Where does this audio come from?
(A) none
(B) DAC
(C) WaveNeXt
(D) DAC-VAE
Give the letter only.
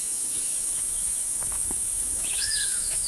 D